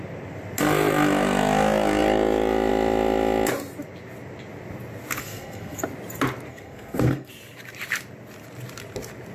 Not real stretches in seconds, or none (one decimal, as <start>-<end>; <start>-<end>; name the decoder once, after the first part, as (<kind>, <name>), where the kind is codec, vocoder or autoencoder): 5.2-5.8 (codec, SNAC); 6.5-7.3